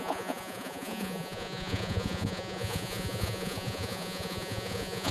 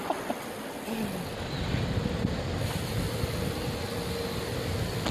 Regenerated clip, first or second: first